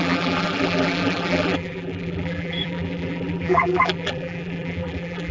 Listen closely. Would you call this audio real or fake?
fake